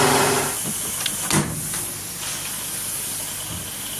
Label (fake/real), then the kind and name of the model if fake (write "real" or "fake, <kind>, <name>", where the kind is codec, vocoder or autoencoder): real